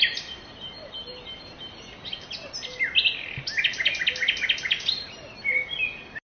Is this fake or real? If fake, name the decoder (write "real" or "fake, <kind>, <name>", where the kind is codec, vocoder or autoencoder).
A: real